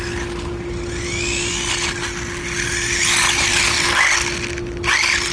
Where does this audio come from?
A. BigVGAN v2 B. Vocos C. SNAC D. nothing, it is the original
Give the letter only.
D